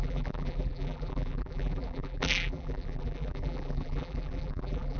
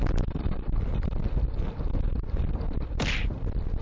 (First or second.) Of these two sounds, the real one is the second